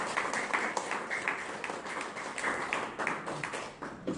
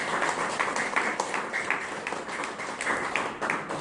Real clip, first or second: first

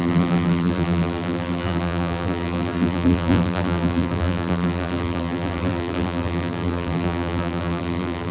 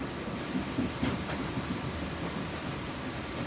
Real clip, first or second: second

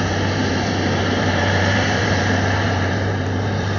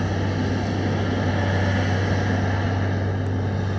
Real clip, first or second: second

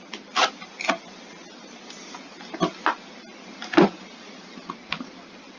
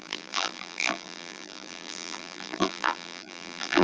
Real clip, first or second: first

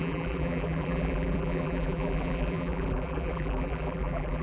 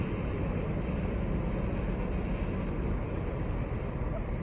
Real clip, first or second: second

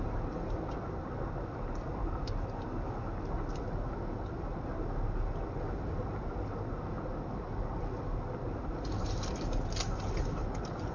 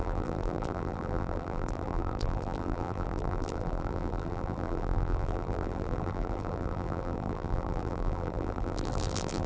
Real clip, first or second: first